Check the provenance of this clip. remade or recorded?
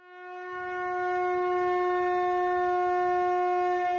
recorded